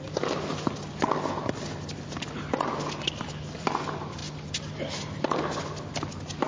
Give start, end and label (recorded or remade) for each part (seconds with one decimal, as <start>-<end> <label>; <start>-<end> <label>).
0.0-6.5 recorded